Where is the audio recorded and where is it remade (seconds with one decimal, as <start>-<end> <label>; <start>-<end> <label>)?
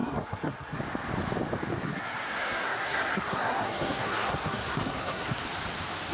0.0-0.8 remade; 0.8-1.7 recorded; 1.7-5.4 remade; 5.4-6.1 recorded